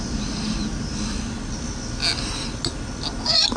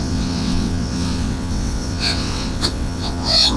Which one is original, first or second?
first